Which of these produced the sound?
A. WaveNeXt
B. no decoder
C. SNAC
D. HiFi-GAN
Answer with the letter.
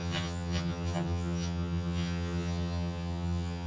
D